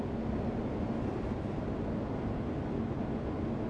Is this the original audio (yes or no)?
yes